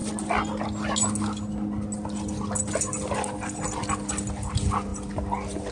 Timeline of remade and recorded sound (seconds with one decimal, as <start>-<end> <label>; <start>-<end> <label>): 0.0-5.7 recorded